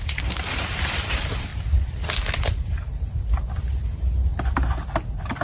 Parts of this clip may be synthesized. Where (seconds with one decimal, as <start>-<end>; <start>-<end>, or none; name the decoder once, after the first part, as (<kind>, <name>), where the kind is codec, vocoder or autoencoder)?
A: 0.0-1.5 (vocoder, BigVGAN v2); 3.6-4.3

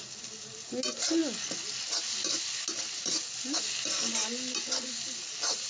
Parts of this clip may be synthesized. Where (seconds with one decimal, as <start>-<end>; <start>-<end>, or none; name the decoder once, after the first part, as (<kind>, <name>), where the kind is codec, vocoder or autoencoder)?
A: none

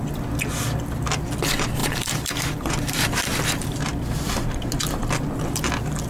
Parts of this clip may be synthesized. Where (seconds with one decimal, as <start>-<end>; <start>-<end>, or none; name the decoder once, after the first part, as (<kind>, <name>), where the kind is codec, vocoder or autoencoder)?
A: 1.8-3.8 (vocoder, BigVGAN v2)

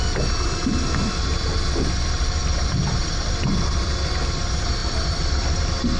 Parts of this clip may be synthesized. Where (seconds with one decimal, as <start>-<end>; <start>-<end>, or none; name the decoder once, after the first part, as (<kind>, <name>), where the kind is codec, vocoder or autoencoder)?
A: 2.4-3.8 (vocoder, BigVGAN v2); 4.8-6.0

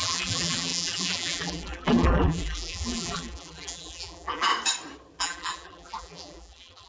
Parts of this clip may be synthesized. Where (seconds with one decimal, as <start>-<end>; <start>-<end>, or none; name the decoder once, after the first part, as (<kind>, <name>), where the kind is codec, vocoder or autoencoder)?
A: 0.0-4.5 (vocoder, BigVGAN v2); 5.2-6.9

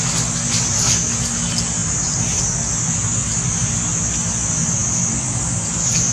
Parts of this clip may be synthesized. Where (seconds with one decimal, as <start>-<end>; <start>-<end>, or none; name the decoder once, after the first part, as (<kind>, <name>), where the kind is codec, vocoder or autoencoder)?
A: 1.8-2.4 (vocoder, BigVGAN v2)

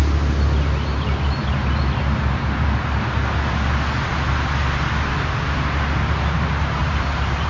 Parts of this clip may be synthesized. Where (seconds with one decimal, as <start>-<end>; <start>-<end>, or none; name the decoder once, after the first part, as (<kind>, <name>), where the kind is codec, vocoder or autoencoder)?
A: 6.8-7.5 (vocoder, BigVGAN v2)

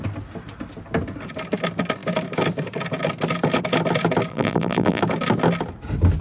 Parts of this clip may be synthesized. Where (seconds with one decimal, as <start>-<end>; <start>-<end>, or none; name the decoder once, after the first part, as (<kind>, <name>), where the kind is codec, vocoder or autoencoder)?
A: 4.3-5.0 (vocoder, BigVGAN v2)